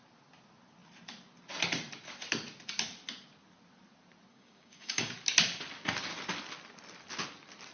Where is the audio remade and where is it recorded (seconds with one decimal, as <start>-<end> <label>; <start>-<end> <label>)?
0.0-4.3 recorded; 4.3-5.1 remade; 5.1-7.7 recorded